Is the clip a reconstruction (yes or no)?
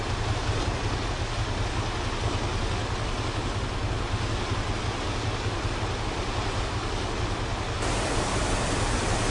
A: no